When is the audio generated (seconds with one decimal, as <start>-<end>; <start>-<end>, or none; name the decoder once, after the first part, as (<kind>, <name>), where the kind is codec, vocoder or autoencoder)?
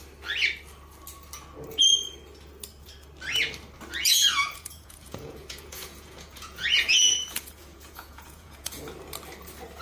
4.0-8.8 (vocoder, Vocos)